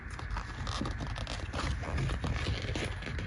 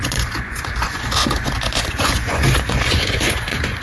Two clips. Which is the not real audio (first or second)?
second